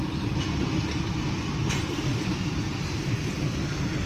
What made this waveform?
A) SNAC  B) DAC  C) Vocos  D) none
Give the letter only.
D